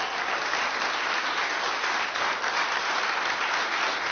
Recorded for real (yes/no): yes